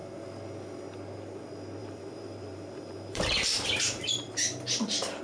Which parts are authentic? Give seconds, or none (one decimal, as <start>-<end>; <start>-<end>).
0.0-1.8